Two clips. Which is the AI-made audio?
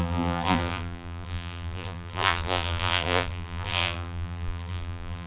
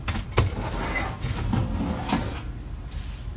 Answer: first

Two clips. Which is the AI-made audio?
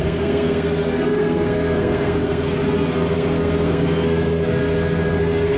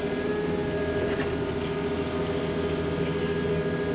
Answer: first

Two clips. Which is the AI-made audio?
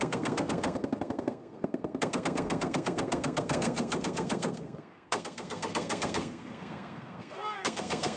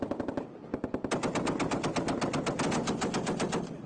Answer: first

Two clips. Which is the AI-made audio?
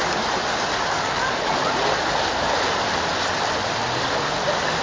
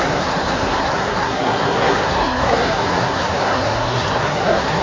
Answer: second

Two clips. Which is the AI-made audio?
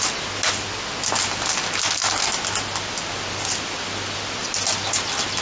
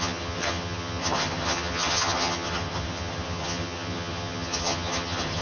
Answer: second